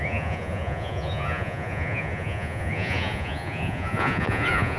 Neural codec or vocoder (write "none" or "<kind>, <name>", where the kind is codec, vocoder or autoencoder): vocoder, Vocos